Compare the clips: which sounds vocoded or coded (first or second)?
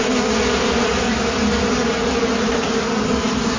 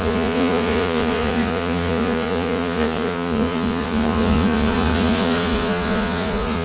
second